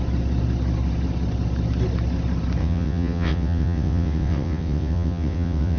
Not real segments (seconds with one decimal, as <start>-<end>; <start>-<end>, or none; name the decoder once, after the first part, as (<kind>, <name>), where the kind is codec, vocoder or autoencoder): 2.6-5.8 (vocoder, WaveNeXt)